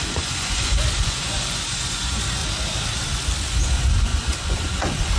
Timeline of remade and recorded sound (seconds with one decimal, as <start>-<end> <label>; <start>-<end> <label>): 0.0-2.4 remade; 2.4-3.5 recorded; 3.5-5.2 remade